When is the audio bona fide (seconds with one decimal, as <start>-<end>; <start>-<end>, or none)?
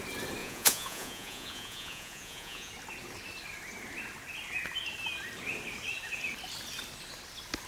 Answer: 0.0-0.4; 2.7-7.7